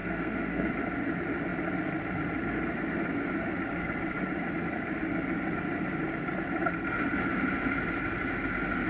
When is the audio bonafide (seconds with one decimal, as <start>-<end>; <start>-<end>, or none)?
0.7-8.9

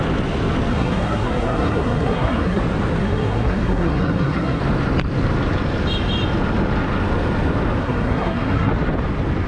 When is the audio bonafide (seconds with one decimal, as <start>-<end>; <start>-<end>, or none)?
0.0-0.7; 2.6-3.0; 4.6-7.8; 8.7-9.5

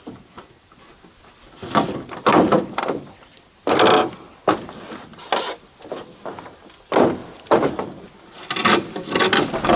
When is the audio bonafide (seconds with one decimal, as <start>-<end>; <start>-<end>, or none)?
0.0-9.8

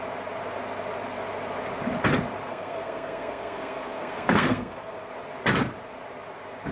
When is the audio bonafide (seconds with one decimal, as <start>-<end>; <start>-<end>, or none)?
0.0-2.5; 5.1-6.7